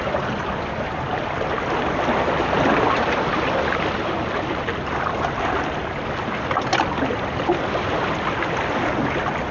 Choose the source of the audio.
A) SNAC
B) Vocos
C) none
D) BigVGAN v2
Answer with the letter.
C